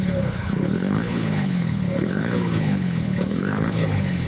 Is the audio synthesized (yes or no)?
yes